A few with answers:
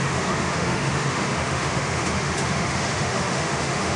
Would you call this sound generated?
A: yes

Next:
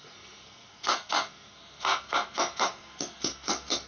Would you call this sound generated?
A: yes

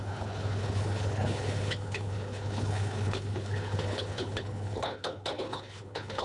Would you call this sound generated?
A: yes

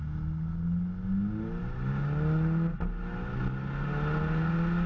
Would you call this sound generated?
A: no